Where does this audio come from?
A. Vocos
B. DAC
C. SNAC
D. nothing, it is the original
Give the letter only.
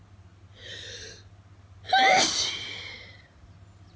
D